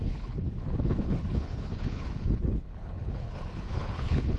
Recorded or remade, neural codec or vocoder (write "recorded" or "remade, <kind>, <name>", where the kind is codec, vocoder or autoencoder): remade, codec, HILCodec